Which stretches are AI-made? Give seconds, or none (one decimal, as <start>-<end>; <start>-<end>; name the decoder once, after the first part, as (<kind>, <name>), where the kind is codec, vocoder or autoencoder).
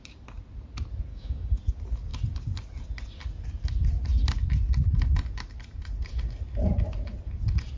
1.1-1.6 (codec, DAC)